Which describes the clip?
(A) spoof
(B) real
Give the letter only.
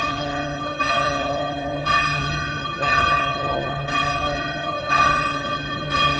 A